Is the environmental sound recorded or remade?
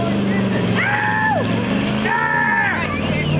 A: recorded